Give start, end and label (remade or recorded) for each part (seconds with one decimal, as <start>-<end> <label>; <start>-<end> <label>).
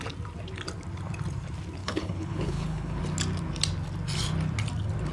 0.0-1.8 recorded; 1.8-3.0 remade; 3.0-5.1 recorded